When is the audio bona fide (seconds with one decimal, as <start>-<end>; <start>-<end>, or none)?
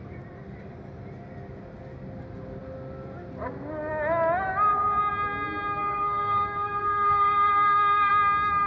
0.0-5.8; 8.1-8.7